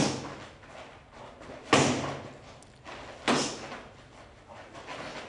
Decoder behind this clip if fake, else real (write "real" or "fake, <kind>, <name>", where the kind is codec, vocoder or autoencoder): real